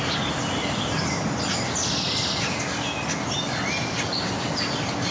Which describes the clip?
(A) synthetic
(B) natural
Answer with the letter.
B